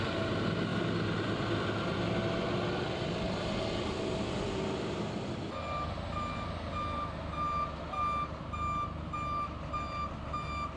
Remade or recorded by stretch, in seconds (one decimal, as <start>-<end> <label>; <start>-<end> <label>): 0.0-10.8 recorded